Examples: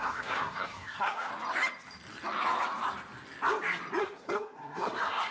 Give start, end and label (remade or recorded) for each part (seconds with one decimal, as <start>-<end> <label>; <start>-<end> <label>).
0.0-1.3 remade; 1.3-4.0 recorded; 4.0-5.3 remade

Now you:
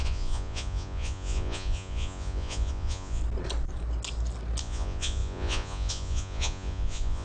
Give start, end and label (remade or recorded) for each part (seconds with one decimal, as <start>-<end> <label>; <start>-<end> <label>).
0.0-3.2 remade; 3.2-4.6 recorded; 4.6-7.2 remade

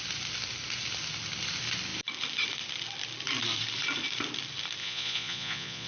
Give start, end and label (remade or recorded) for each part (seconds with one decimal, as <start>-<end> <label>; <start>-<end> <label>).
0.0-4.8 recorded; 4.8-5.9 remade